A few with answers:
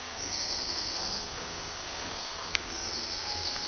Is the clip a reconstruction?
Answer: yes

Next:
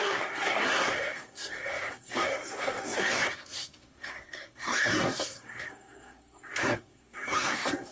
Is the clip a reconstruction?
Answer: yes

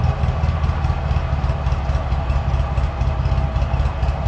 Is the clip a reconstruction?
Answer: no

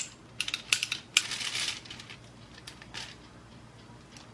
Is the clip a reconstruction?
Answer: no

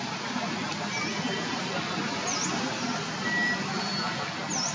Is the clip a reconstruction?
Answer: no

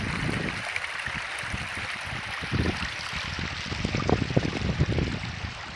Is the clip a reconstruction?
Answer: no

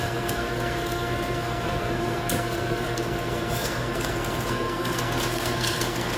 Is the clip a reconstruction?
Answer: yes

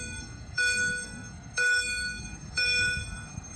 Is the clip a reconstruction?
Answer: yes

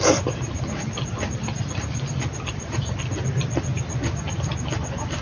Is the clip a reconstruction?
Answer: no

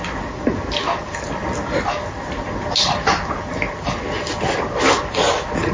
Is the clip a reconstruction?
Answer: no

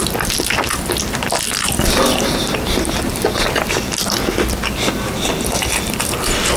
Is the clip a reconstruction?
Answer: no